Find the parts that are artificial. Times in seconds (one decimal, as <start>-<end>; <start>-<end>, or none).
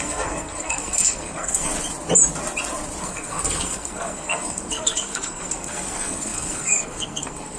0.0-1.7; 3.0-7.6